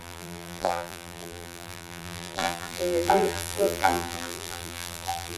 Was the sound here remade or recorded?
remade